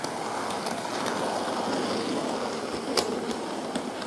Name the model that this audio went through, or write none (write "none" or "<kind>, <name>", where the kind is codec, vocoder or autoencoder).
none